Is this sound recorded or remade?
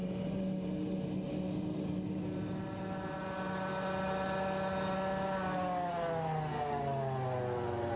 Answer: recorded